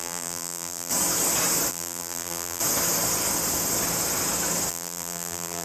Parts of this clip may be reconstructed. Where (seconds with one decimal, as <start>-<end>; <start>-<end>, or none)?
0.0-0.9; 1.7-2.6; 4.7-5.6